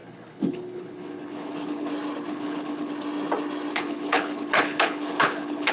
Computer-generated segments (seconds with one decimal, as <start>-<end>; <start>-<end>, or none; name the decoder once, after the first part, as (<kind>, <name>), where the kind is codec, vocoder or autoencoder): 0.0-1.9 (codec, HILCodec); 2.3-2.9; 3.7-5.7